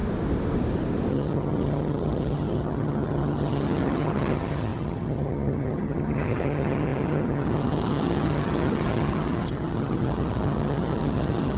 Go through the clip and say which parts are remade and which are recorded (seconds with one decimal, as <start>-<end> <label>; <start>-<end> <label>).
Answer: 0.0-1.1 recorded; 1.1-11.6 remade